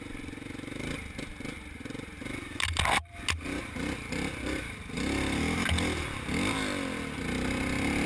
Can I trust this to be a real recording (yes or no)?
yes